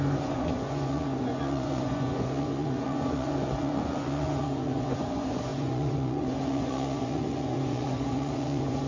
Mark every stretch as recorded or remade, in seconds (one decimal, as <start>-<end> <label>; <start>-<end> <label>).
0.0-8.9 remade